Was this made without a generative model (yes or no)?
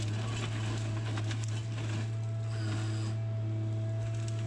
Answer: yes